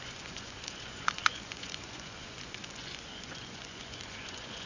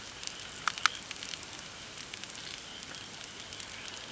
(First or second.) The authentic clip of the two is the second